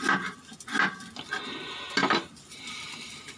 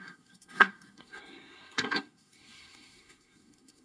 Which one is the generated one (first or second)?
second